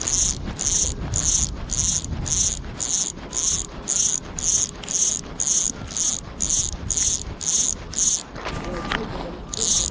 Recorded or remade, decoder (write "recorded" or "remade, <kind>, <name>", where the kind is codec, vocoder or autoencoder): recorded